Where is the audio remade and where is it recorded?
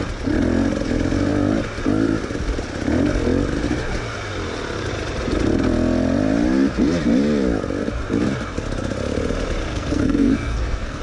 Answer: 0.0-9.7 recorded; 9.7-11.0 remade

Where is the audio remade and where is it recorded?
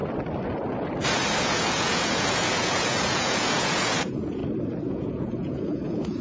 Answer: 0.0-1.4 recorded; 1.4-4.4 remade; 4.4-4.9 recorded; 4.9-6.2 remade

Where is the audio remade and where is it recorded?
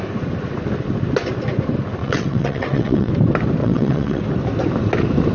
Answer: 0.0-2.0 recorded; 2.0-3.1 remade; 3.1-3.6 recorded; 3.6-4.2 remade; 4.2-5.3 recorded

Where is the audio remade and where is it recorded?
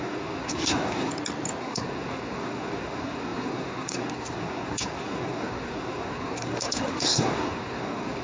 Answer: 0.0-1.1 remade; 1.1-1.6 recorded; 1.6-8.2 remade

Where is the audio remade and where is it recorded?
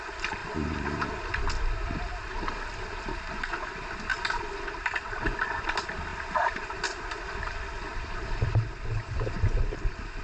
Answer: 0.0-0.4 recorded; 0.4-1.4 remade; 1.4-4.1 recorded; 4.1-5.2 remade; 5.2-6.1 recorded; 6.1-7.4 remade; 7.4-7.9 recorded; 7.9-9.0 remade; 9.0-10.2 recorded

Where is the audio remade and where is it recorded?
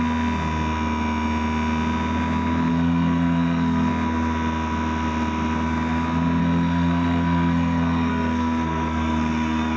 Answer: 0.0-2.7 recorded; 2.7-3.9 remade; 3.9-6.4 recorded; 6.4-9.8 remade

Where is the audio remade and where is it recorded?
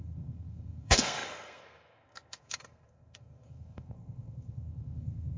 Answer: 0.0-5.4 remade